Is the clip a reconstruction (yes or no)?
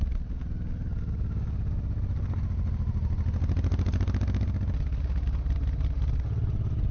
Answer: no